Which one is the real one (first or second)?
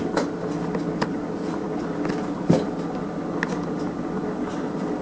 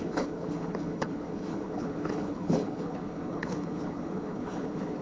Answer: first